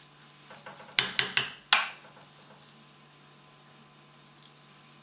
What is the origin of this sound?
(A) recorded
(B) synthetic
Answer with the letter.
A